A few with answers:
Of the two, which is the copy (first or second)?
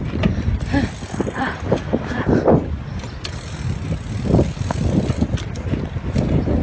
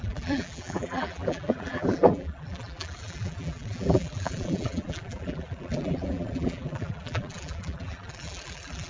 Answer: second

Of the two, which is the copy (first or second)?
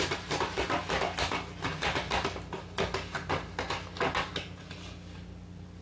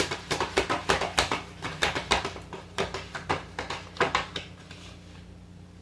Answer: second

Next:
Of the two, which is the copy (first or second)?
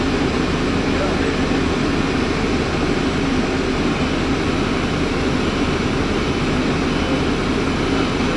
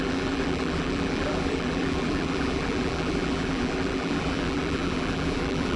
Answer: second